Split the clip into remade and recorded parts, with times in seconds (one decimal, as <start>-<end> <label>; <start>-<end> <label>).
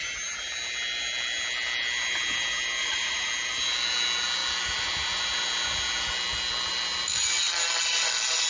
0.0-2.8 recorded; 2.8-3.3 remade; 3.3-8.5 recorded